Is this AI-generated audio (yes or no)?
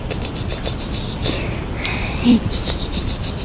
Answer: yes